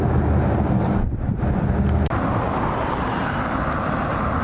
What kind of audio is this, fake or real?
real